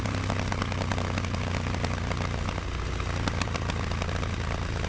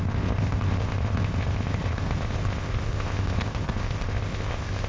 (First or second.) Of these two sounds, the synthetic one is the second